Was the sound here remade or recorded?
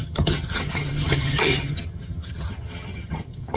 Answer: remade